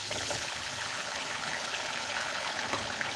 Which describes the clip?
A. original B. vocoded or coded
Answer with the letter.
B